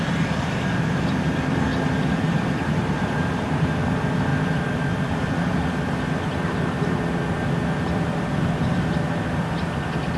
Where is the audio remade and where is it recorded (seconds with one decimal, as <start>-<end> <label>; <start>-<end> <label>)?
0.0-1.7 recorded; 1.7-3.5 remade; 3.5-4.3 recorded; 4.3-8.8 remade; 8.8-10.2 recorded